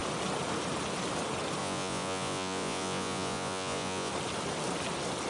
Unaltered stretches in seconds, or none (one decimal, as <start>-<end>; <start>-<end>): 0.0-1.6; 4.1-5.3